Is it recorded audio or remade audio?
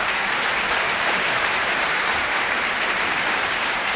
remade